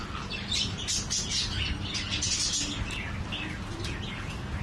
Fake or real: real